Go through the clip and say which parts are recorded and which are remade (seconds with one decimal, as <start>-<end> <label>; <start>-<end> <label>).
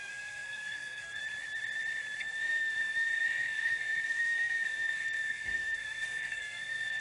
0.0-1.2 remade; 1.2-2.2 recorded; 2.2-7.0 remade